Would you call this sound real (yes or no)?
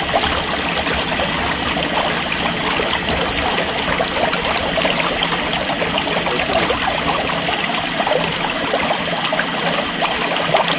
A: yes